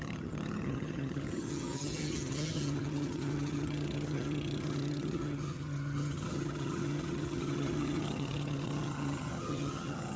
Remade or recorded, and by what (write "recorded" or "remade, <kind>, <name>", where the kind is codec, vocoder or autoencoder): remade, vocoder, HiFi-GAN